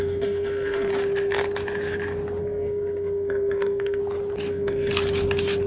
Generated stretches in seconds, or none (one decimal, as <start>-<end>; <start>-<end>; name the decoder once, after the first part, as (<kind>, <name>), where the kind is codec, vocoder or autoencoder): 0.0-0.9 (codec, SNAC); 2.4-4.0; 4.5-4.9